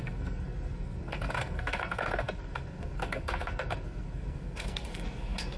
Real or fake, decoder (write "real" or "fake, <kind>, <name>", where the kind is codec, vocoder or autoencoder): fake, codec, SNAC